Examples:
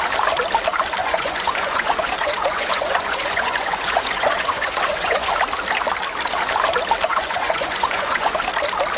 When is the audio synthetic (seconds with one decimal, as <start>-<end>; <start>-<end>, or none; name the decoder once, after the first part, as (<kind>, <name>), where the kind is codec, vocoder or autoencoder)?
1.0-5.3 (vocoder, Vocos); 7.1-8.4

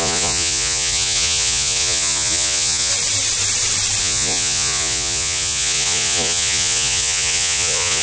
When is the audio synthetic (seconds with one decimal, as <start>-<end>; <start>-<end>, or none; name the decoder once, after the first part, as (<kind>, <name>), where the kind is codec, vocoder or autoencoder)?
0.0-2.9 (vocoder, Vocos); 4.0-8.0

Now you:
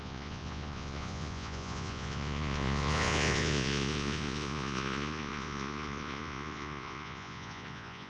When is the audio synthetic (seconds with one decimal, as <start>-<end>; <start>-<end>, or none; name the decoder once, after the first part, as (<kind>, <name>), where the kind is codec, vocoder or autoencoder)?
0.0-8.1 (vocoder, Vocos)